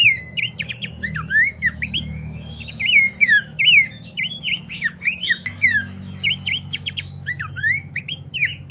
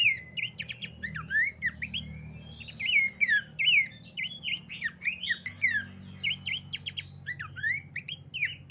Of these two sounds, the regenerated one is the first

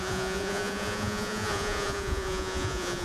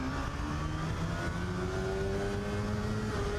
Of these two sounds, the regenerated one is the first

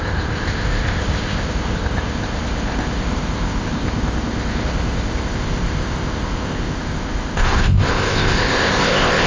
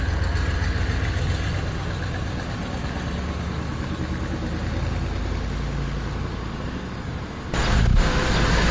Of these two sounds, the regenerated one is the first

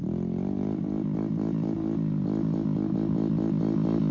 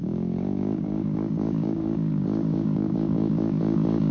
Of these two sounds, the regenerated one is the second